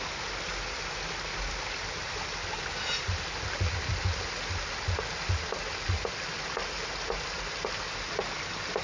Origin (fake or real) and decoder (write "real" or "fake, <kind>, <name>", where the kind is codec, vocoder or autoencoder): real